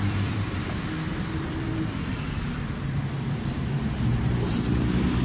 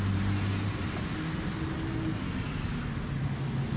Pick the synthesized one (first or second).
first